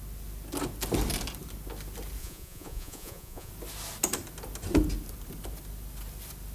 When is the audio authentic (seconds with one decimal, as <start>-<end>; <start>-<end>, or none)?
0.0-2.2; 3.5-6.5